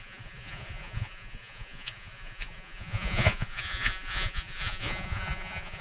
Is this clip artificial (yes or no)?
yes